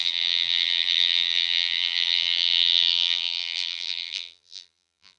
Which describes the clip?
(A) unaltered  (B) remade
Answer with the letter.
B